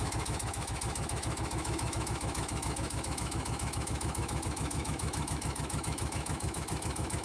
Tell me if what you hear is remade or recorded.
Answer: remade